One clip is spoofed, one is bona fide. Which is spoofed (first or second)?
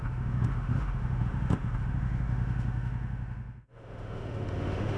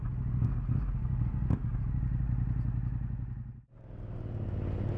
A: first